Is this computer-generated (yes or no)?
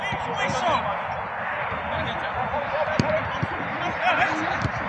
no